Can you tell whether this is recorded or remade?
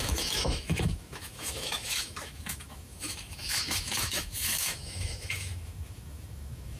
remade